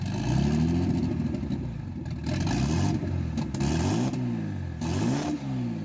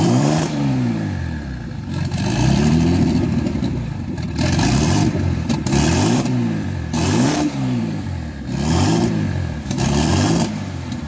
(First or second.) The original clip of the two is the first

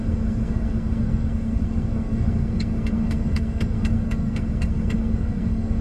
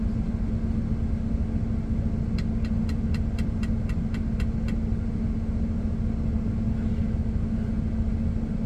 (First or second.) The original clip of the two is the second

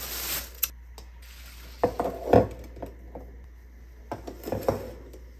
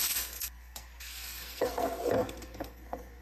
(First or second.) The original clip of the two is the first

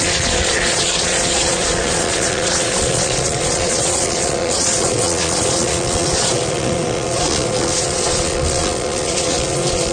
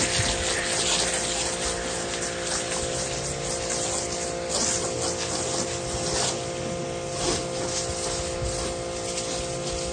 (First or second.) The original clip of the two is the second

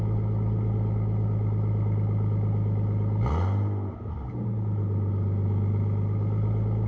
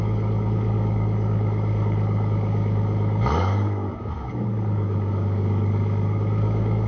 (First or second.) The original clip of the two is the first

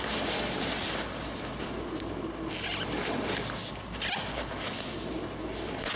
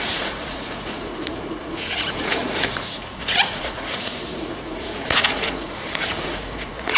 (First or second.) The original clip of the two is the first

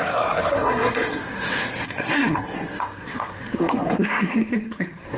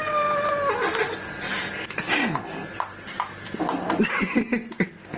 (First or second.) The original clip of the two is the second